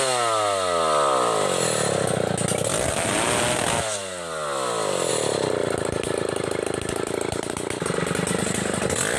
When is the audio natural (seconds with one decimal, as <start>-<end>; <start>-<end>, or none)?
0.0-9.2